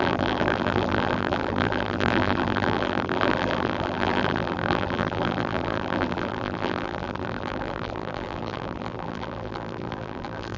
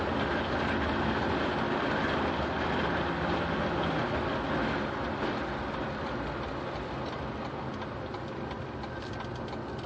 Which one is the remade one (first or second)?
first